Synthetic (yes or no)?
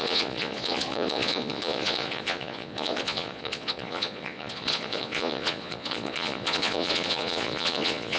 yes